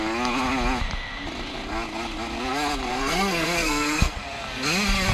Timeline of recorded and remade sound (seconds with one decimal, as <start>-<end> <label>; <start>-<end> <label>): 0.0-2.9 recorded; 2.9-4.2 remade; 4.2-5.1 recorded